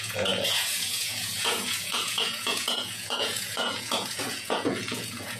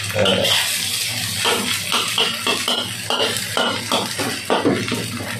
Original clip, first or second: second